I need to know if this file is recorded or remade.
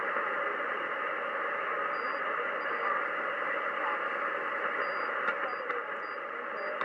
recorded